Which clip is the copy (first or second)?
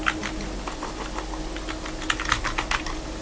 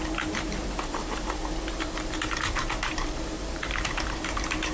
second